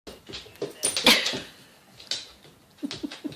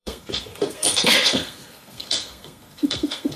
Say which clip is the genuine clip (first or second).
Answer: first